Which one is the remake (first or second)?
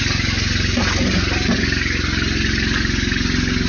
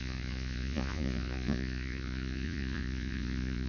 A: second